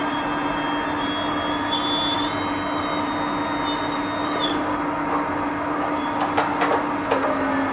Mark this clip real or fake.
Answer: real